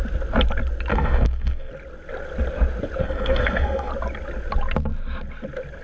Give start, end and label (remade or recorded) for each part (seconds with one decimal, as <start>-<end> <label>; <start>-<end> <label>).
0.0-0.9 recorded; 0.9-1.7 remade; 1.7-3.0 recorded; 3.0-3.9 remade; 3.9-5.8 recorded

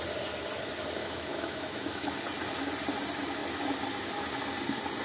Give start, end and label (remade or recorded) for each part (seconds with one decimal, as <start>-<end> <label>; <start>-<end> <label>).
0.0-1.0 recorded; 1.0-2.1 remade; 2.1-5.0 recorded

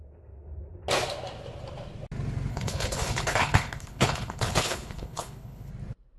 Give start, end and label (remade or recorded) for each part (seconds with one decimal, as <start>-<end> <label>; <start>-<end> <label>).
0.0-2.5 recorded; 2.5-5.7 remade; 5.7-6.2 recorded